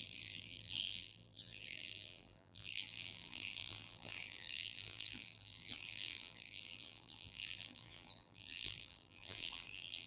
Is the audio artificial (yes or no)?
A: yes